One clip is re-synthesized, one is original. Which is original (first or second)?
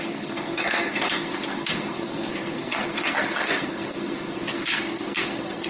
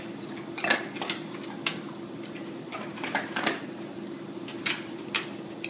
second